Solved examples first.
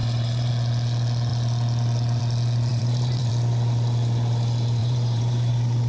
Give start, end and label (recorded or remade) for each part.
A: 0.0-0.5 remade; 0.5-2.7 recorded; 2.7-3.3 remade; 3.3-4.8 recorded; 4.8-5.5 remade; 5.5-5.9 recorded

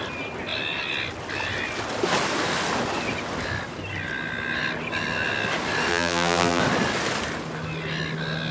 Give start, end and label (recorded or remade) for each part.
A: 0.0-5.9 recorded; 5.9-6.6 remade; 6.6-8.5 recorded

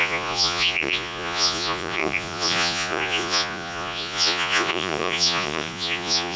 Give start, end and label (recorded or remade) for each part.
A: 0.0-6.4 remade

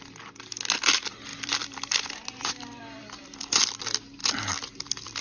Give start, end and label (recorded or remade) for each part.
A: 0.0-1.3 recorded; 1.3-3.7 remade; 3.7-4.2 recorded; 4.2-5.2 remade

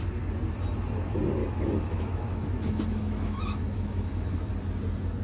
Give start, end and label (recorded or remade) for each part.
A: 0.0-1.4 recorded; 1.4-4.5 remade; 4.5-5.2 recorded

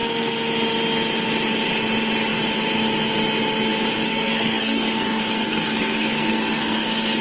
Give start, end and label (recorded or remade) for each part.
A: 0.0-4.1 recorded; 4.1-7.2 remade